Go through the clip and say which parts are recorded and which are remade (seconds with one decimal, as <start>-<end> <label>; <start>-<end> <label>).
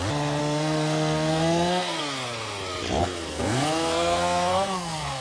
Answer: 0.0-0.4 recorded; 0.4-2.0 remade; 2.0-3.0 recorded; 3.0-5.2 remade